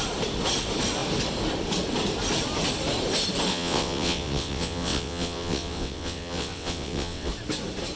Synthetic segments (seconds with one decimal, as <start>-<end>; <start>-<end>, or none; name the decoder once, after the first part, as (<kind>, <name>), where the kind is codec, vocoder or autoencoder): 3.5-7.3 (vocoder, WaveNeXt)